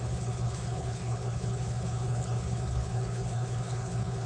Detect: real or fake fake